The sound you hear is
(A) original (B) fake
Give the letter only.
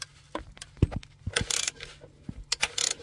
A